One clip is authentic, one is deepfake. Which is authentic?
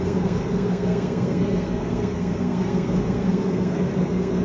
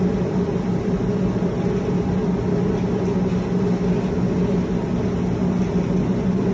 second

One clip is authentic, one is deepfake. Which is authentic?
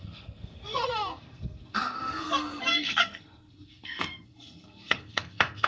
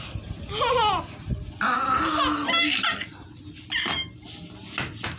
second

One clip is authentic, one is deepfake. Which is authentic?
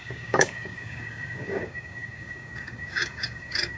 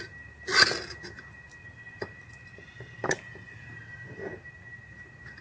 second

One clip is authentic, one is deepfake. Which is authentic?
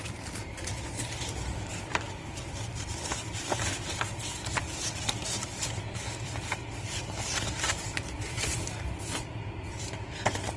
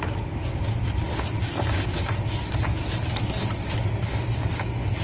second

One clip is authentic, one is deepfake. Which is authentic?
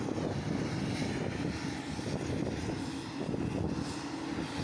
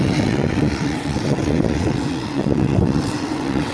first